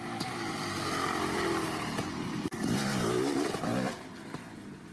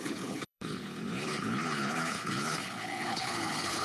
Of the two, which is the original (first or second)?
first